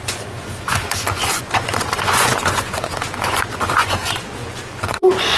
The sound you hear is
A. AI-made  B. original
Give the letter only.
A